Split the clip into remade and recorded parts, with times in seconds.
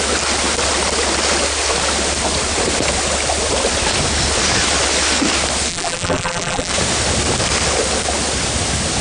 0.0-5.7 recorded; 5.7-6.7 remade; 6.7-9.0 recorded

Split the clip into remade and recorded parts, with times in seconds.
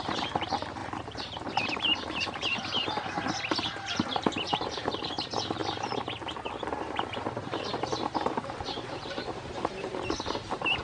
0.0-2.8 remade; 2.8-3.6 recorded; 3.6-5.6 remade; 5.6-6.8 recorded; 6.8-10.8 remade